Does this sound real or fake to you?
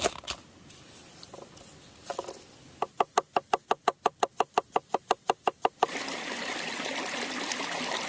real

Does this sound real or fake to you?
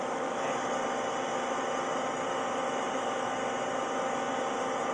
real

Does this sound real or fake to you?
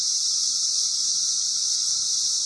real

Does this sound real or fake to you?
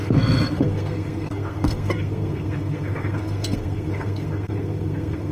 fake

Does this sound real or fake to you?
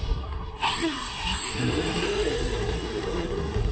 fake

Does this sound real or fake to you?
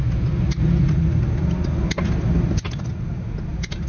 real